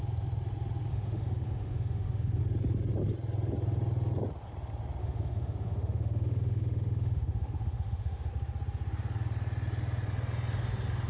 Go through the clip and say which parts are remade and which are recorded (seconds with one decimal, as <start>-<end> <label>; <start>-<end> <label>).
0.0-0.9 recorded; 0.9-2.4 remade; 2.4-5.0 recorded; 5.0-8.3 remade; 8.3-11.1 recorded